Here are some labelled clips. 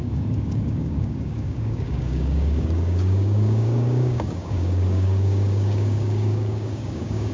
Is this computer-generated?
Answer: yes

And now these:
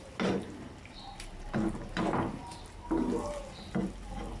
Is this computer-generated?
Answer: no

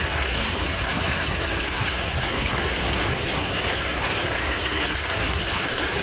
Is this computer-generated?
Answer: yes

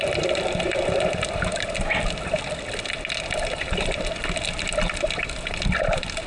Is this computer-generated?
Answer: no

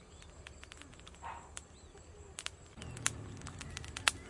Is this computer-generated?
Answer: no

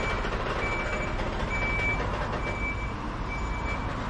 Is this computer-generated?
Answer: no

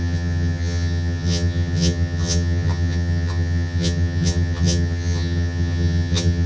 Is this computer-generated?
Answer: yes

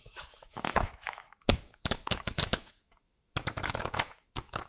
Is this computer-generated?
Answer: yes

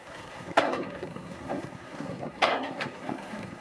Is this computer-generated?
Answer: yes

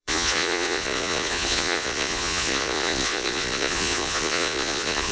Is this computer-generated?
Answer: yes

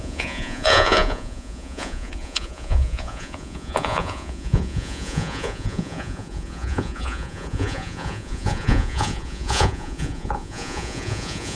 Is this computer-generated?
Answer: yes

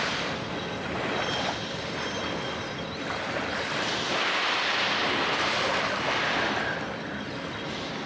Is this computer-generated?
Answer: no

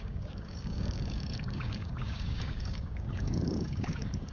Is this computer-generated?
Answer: yes